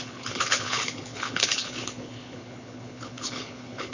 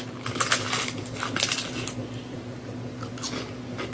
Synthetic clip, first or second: first